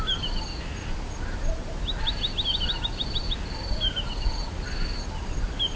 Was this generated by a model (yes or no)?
no